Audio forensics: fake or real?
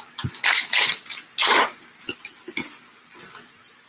real